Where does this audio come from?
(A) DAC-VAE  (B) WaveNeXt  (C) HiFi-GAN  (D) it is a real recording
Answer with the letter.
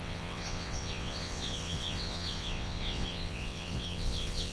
B